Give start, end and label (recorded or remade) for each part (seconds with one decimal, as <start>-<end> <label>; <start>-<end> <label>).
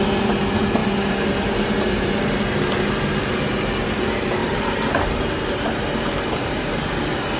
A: 0.0-0.8 recorded; 0.8-2.2 remade; 2.2-4.4 recorded; 4.4-7.0 remade; 7.0-7.4 recorded